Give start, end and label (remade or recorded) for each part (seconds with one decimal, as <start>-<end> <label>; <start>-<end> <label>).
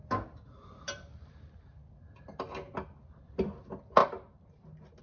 0.0-5.0 recorded